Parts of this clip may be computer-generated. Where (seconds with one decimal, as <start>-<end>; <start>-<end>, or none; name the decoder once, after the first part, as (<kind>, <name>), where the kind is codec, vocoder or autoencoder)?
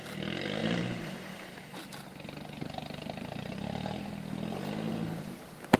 0.6-4.1 (vocoder, BigVGAN v2); 4.9-5.8